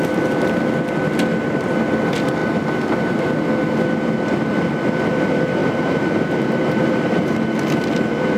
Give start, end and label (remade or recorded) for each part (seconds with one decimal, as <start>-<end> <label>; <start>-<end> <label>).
0.0-5.6 recorded; 5.6-7.4 remade; 7.4-8.4 recorded